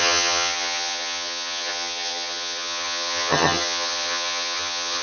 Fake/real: fake